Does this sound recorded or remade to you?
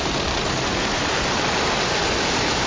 remade